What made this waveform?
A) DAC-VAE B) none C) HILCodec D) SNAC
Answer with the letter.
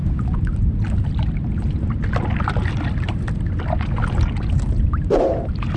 B